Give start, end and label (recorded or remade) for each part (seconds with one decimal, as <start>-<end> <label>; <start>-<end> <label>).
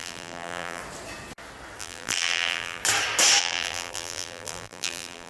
0.0-0.8 remade; 0.8-1.8 recorded; 1.8-2.8 remade; 2.8-3.4 recorded; 3.4-5.3 remade